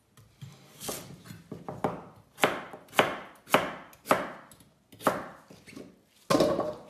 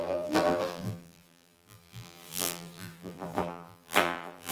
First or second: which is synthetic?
second